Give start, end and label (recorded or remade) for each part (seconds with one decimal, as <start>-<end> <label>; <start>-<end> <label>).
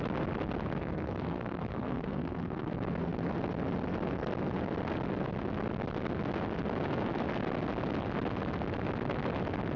0.0-0.8 recorded; 0.8-2.7 remade; 2.7-9.8 recorded